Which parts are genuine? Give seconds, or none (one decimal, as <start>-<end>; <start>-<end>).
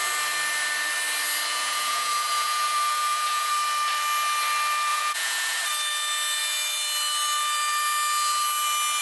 0.0-1.5; 3.5-4.9; 5.6-9.0